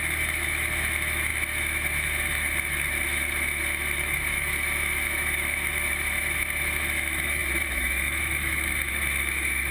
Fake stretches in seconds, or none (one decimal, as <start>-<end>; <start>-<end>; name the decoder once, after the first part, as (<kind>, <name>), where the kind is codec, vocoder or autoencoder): 0.0-9.7 (autoencoder, DAC-VAE)